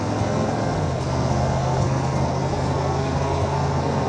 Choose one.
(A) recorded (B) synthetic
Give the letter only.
B